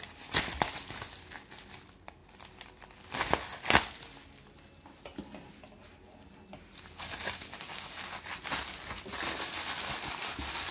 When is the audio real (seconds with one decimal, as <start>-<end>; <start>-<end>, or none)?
0.0-10.7